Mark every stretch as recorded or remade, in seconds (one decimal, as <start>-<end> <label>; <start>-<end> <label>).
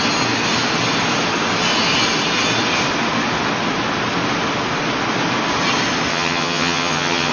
0.0-6.1 recorded; 6.1-7.3 remade